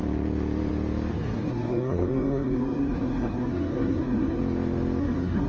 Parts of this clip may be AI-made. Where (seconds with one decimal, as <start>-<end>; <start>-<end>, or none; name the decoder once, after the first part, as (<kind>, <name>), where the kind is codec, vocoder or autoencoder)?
1.1-4.4 (codec, SNAC); 5.0-5.5